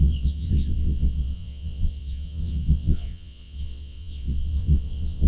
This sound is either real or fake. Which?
fake